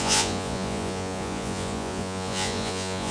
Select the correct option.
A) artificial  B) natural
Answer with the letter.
A